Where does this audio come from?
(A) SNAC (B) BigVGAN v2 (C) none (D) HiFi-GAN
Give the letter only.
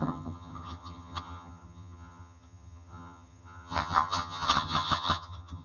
D